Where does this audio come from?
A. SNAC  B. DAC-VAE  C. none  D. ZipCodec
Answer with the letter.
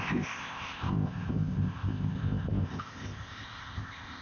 D